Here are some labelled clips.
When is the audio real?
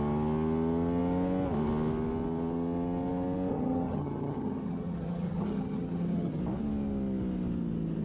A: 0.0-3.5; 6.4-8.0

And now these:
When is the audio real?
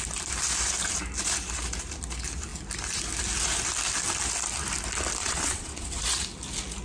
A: 0.0-5.2; 6.0-6.8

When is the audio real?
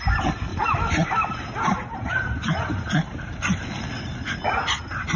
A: 0.0-0.5; 3.6-5.2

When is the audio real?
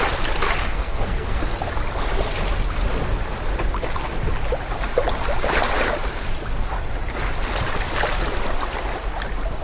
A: 0.0-0.6; 1.4-9.6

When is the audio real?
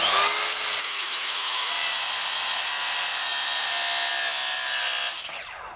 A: 0.0-0.8; 1.7-5.8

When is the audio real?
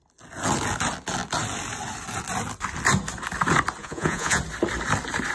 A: 0.0-3.8; 4.4-5.3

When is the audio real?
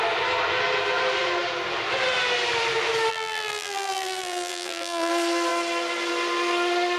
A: 0.0-3.1; 5.1-7.0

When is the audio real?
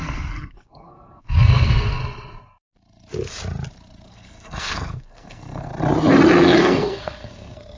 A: 2.0-4.1; 5.7-6.6